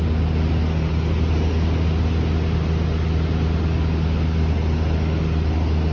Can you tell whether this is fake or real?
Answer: real